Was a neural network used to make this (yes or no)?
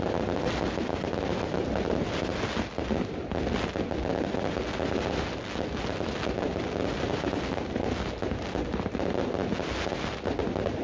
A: no